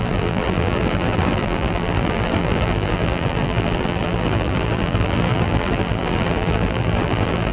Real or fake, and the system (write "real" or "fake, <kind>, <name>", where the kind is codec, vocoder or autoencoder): fake, vocoder, BigVGAN v2